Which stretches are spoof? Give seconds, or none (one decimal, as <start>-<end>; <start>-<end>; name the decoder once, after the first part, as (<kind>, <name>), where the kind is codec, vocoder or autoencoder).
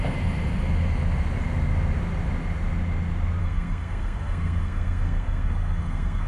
3.4-6.3 (codec, SNAC)